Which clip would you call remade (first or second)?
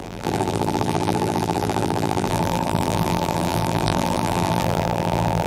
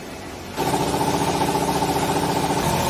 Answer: first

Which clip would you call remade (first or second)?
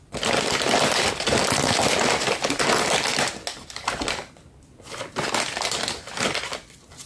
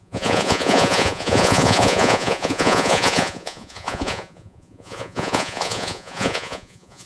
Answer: second